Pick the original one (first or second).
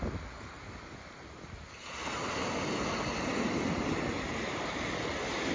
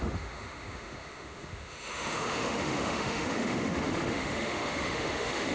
first